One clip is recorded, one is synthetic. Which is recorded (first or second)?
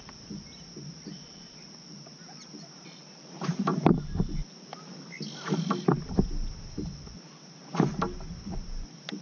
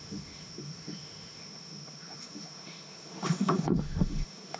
first